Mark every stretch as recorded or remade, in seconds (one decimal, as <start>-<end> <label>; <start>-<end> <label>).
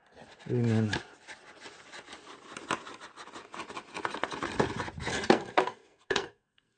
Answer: 0.0-5.1 recorded; 5.1-6.8 remade